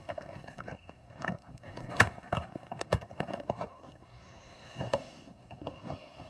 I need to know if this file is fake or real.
fake